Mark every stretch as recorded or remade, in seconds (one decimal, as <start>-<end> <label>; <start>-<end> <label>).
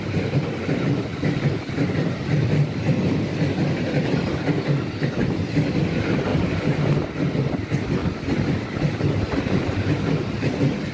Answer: 0.0-6.3 recorded; 6.3-7.1 remade; 7.1-10.9 recorded